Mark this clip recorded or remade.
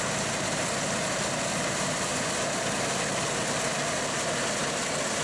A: remade